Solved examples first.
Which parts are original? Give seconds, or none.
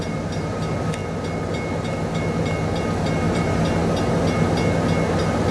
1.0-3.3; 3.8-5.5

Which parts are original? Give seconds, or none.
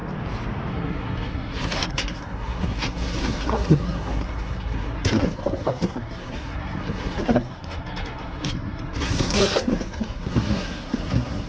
0.0-0.7